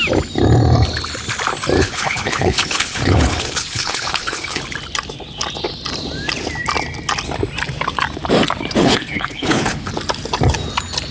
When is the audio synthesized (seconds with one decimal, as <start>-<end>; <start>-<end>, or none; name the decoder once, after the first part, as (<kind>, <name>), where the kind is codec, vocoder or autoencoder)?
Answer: 1.8-4.6 (codec, HILCodec); 8.8-9.9